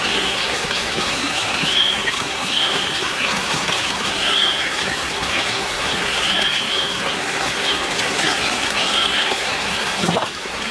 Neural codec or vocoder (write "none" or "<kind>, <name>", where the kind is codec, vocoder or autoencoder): codec, SNAC